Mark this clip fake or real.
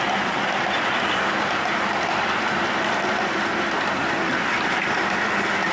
real